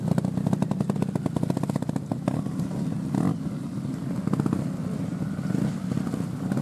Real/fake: real